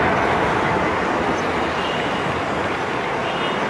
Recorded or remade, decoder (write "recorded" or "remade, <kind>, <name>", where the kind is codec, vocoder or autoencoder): recorded